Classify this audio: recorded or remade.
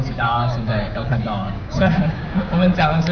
remade